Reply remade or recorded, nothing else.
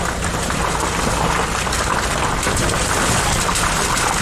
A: recorded